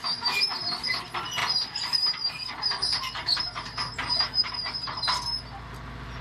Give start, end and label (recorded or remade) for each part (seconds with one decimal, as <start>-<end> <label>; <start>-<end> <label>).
0.0-1.4 recorded; 1.4-3.4 remade; 3.4-4.4 recorded; 4.4-5.0 remade; 5.0-6.2 recorded